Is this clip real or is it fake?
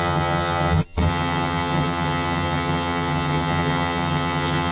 fake